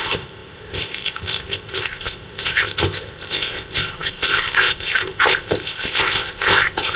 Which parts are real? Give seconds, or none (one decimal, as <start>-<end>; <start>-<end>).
none